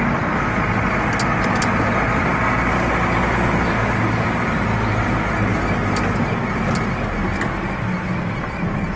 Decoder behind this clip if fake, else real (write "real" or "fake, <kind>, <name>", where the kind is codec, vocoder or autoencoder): real